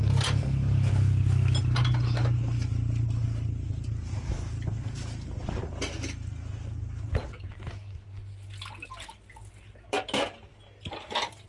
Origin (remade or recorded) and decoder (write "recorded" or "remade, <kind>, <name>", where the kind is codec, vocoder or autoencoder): recorded